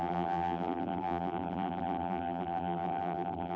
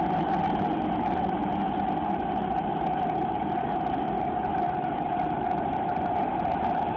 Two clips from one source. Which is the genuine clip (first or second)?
second